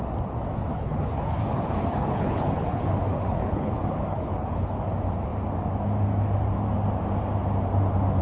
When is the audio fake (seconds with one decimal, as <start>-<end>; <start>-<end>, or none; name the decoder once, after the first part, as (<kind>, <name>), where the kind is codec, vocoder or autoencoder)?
0.7-4.8 (codec, HILCodec)